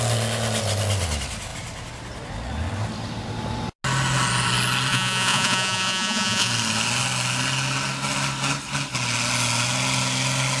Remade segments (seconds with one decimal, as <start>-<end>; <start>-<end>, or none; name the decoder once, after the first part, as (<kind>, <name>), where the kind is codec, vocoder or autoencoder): 4.9-6.5 (vocoder, Vocos)